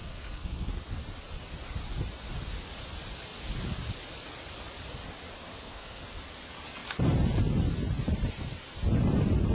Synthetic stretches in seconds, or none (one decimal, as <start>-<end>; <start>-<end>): 0.0-0.7; 5.5-6.0